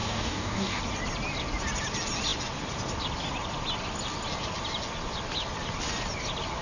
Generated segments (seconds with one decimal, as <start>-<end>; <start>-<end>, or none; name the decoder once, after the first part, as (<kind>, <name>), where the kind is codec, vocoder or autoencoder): 0.0-0.8 (codec, DAC)